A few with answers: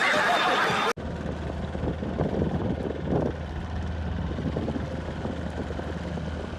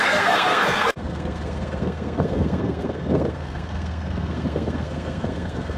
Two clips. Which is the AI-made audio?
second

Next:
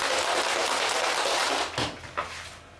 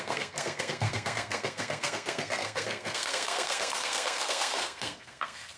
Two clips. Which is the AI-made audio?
second